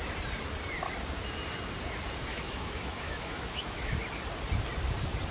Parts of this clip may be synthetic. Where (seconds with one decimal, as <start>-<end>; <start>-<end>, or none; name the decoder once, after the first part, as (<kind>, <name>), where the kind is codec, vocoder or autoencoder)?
2.3-4.0 (autoencoder, DAC-VAE)